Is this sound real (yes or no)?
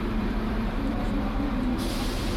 no